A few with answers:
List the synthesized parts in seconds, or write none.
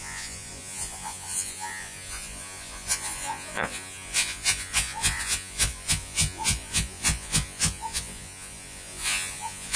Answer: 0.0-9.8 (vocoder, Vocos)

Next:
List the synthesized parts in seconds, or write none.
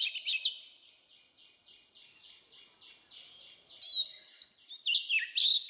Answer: none